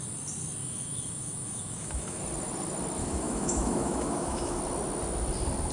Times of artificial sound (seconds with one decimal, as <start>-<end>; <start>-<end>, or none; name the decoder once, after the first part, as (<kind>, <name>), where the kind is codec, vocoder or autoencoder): 0.6-2.2 (autoencoder, DAC-VAE); 3.0-4.6